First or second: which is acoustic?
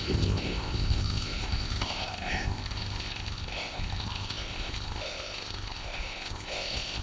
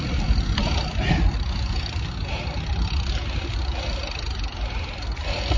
second